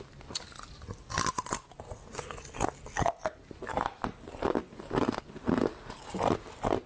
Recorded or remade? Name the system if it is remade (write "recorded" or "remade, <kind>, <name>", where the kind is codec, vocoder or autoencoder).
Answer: recorded